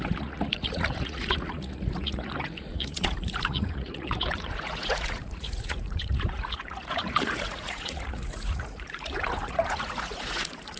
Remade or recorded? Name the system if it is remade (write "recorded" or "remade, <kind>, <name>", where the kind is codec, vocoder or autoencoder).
remade, vocoder, Vocos